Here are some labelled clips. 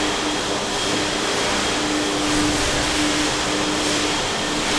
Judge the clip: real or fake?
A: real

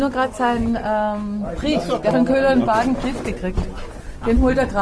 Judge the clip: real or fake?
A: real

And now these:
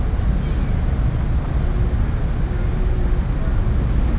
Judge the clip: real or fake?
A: real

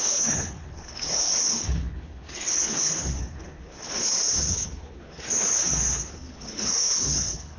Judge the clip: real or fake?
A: fake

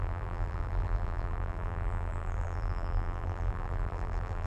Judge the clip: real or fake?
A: fake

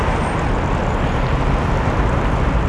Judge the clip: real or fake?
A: real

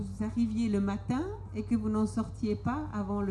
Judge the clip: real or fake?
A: real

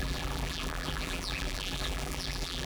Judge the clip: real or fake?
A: fake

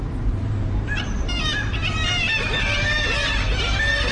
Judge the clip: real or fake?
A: fake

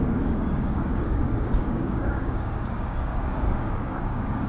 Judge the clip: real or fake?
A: fake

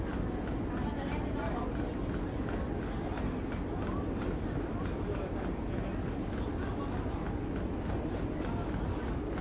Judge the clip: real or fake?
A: real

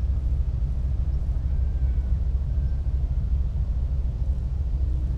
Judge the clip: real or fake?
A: real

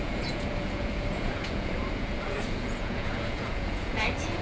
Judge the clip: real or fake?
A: fake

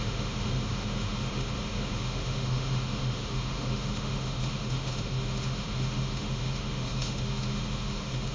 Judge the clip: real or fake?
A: fake